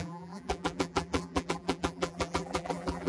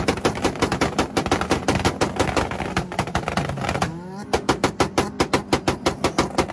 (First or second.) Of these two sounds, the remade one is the first